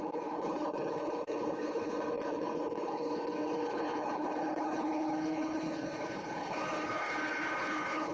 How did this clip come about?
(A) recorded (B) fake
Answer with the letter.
B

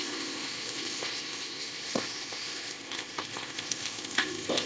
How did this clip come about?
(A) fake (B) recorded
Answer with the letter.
A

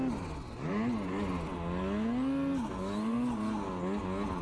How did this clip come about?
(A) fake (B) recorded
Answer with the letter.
B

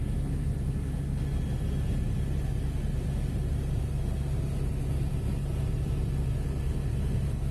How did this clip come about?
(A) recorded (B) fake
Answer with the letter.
A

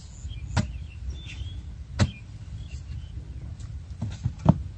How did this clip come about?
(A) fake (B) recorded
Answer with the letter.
B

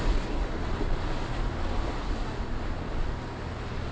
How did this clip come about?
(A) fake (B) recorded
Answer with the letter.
B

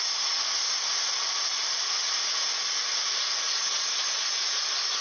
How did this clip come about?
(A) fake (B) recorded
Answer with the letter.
B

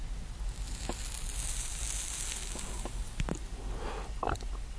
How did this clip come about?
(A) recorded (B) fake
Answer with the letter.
A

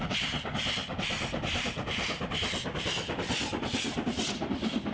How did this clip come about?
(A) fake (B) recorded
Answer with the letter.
B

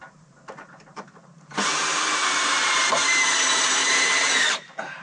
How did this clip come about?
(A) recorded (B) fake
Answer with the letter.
B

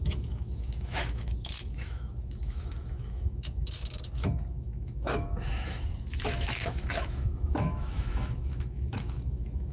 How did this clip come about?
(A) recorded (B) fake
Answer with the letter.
B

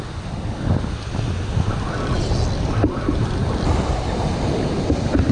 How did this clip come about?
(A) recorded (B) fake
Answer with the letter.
A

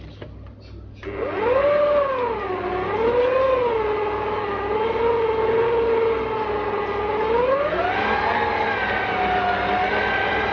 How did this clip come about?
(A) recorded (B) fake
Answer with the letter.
A